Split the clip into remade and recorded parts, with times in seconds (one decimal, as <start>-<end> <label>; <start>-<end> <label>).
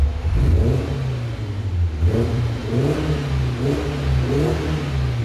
0.0-5.2 recorded